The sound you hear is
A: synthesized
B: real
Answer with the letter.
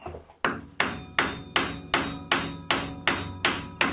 B